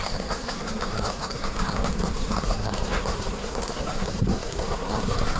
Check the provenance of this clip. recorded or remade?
remade